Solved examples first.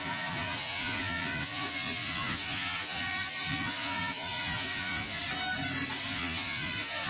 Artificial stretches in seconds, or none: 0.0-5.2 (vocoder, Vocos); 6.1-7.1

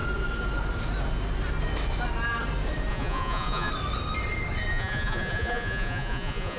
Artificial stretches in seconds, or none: 2.9-3.7 (vocoder, Vocos); 4.7-6.6

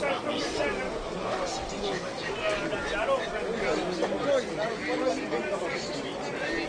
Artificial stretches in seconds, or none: none

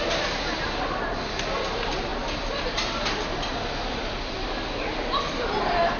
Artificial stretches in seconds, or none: none

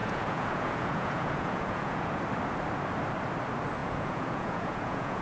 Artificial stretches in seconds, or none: 0.0-2.2 (vocoder, Vocos); 3.8-5.2